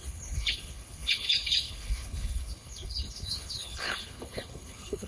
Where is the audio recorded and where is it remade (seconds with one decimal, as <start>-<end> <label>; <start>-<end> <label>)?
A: 0.0-5.1 remade